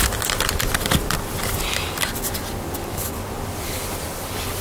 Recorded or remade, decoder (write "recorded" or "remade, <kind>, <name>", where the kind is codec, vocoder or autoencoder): recorded